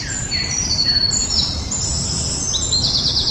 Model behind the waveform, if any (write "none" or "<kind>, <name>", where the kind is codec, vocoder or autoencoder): none